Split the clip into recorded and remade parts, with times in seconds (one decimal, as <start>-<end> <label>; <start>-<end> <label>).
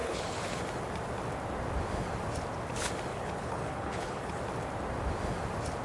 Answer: 0.0-0.6 remade; 0.6-3.1 recorded; 3.1-4.4 remade; 4.4-5.8 recorded